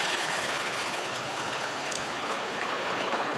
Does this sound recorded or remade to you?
remade